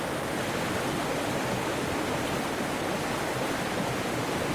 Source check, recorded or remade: recorded